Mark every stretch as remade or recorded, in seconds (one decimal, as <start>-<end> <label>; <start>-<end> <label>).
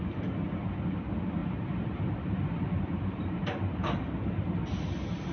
0.0-1.4 recorded; 1.4-4.6 remade; 4.6-5.3 recorded